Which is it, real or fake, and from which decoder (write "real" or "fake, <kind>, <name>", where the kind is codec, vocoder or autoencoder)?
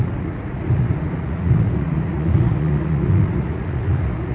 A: fake, vocoder, Vocos